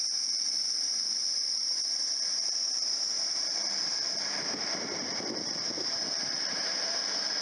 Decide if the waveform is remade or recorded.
remade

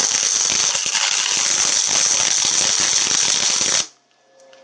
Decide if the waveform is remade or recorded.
recorded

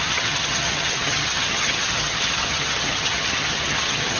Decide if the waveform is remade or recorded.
remade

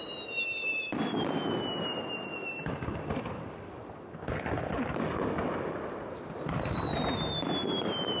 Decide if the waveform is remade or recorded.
recorded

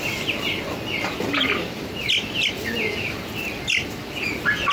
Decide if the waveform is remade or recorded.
recorded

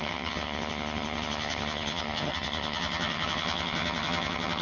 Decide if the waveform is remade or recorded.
remade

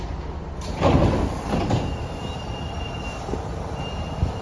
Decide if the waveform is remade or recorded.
recorded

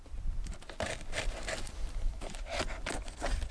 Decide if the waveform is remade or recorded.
recorded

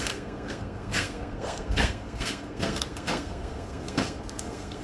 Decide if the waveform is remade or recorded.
remade